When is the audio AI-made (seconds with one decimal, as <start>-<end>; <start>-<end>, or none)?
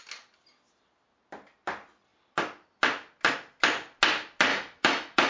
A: 4.5-5.3